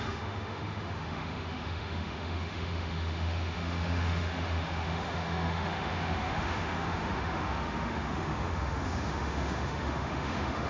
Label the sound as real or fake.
fake